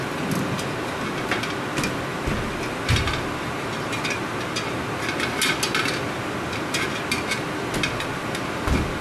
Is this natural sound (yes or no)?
yes